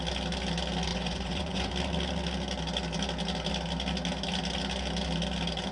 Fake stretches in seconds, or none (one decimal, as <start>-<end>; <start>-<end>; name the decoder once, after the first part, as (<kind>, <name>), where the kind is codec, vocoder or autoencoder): 0.9-1.7 (vocoder, Vocos)